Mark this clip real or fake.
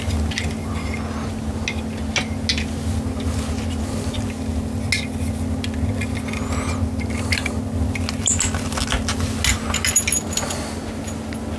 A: real